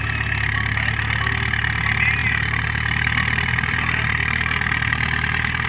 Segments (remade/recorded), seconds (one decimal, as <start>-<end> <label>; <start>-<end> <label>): 0.0-2.2 recorded; 2.2-5.7 remade